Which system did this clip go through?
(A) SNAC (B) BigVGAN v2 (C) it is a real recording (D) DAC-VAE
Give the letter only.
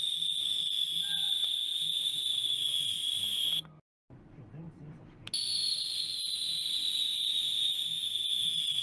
C